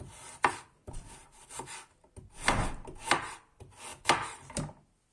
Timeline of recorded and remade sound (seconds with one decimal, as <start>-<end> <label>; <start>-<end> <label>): 0.0-5.1 recorded